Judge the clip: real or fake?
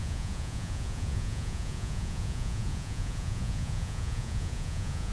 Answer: fake